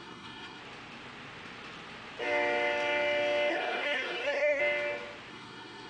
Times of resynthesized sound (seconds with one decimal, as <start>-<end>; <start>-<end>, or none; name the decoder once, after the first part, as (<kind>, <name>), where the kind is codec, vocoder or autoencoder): 0.0-0.6 (codec, SNAC); 3.5-4.6; 5.3-5.9